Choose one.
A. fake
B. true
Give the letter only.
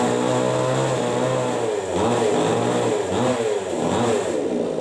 B